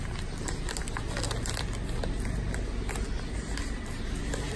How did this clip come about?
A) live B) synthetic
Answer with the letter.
A